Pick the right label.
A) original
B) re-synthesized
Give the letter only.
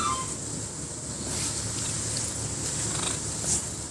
A